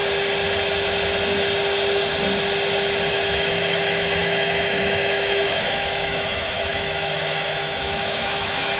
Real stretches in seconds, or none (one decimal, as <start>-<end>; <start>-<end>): 0.0-3.1